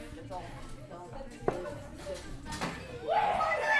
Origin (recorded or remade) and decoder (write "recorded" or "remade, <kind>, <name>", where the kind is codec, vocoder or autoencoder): recorded